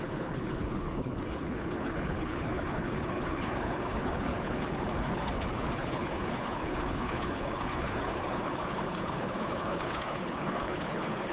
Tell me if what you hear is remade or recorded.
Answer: remade